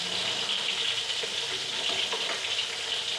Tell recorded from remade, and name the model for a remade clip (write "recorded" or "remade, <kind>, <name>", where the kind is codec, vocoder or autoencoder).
recorded